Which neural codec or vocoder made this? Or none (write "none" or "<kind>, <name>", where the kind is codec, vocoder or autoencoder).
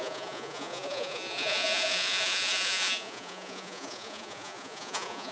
vocoder, Vocos